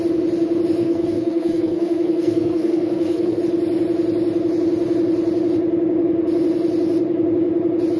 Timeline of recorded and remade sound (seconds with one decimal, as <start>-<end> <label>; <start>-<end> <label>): 0.0-0.8 recorded; 0.8-3.4 remade; 3.4-8.0 recorded